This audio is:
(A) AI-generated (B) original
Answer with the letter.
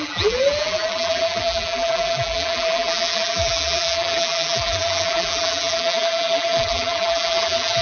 A